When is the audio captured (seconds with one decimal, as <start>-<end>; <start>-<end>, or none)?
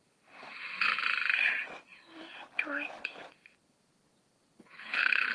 0.0-4.6